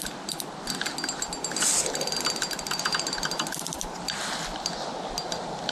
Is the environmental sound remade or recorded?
recorded